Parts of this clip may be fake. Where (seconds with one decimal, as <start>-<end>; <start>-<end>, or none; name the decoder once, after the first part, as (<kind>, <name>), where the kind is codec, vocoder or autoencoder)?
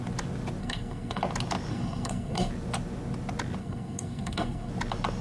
0.6-1.2 (codec, SNAC); 1.7-2.5; 3.6-4.7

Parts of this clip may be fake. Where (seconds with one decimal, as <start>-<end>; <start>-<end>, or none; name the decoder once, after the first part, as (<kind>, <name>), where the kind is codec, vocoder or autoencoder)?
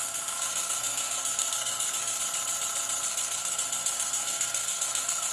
0.0-2.2 (codec, SNAC); 3.1-5.3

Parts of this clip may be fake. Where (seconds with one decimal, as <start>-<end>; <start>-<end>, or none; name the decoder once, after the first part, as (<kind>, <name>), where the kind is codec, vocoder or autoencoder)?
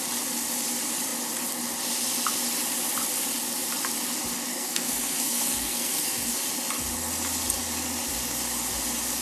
4.5-6.3 (codec, SNAC)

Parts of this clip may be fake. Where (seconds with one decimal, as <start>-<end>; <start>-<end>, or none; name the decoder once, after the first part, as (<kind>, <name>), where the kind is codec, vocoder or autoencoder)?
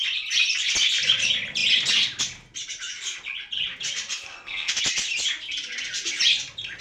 4.3-4.8 (codec, SNAC)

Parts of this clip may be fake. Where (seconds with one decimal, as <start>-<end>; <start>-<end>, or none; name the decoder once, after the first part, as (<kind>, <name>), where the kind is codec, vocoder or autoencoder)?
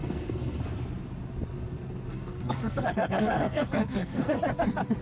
0.0-0.6 (codec, SNAC); 2.1-4.4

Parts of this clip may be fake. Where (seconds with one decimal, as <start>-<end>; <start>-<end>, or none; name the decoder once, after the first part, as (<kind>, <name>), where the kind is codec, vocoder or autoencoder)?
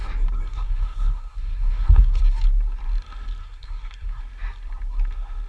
0.5-2.2 (codec, SNAC); 3.4-4.2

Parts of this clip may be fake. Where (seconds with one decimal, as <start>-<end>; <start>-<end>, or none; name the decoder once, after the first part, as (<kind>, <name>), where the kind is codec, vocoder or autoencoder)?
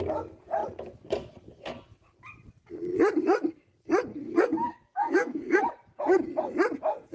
4.1-5.6 (codec, SNAC)